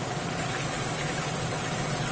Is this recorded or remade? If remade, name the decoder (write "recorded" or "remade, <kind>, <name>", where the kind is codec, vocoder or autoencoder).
recorded